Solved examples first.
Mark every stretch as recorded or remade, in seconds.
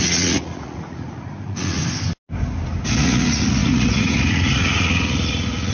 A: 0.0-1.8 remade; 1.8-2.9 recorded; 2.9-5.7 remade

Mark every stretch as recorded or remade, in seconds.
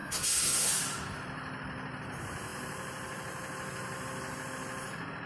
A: 0.0-0.7 remade; 0.7-5.3 recorded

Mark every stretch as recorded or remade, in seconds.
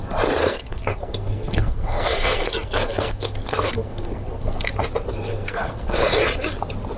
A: 0.0-0.4 recorded; 0.4-4.6 remade; 4.6-5.3 recorded; 5.3-6.1 remade; 6.1-7.0 recorded